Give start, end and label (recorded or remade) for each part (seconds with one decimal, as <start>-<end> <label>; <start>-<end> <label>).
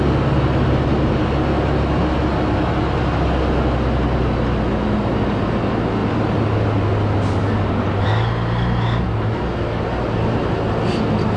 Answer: 0.0-11.4 recorded